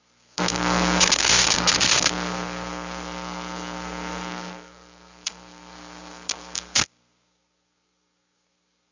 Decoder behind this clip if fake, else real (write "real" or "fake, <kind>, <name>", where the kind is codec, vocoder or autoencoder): fake, codec, SNAC